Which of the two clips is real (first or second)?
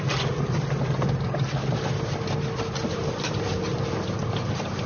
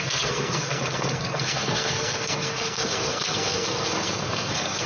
first